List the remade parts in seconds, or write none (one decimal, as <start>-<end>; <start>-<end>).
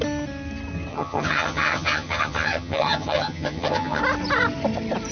0.9-4.0